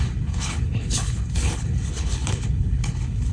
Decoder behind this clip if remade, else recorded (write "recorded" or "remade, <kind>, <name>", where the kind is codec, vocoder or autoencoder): remade, codec, HILCodec